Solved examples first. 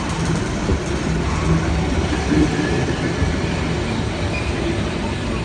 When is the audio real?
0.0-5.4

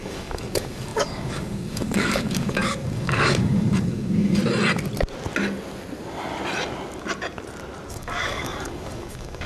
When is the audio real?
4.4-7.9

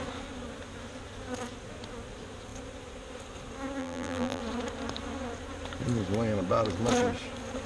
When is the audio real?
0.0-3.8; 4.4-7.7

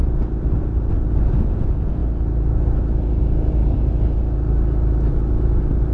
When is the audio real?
0.0-3.6; 4.2-5.9

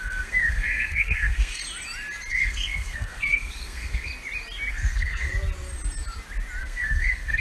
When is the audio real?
1.6-2.3; 4.1-4.7; 5.3-6.6